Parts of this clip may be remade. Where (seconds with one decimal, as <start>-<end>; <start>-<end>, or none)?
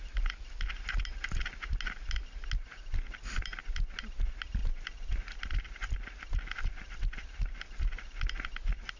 none